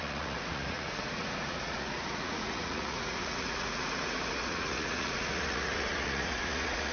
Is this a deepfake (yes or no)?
yes